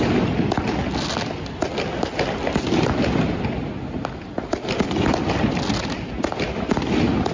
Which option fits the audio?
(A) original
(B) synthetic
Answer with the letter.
A